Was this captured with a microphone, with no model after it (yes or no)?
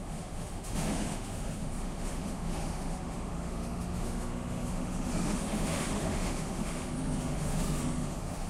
no